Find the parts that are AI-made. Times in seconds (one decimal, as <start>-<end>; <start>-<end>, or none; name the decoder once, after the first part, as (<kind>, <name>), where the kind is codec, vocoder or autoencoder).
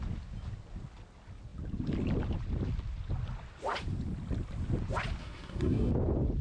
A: 5.2-5.9 (codec, SNAC)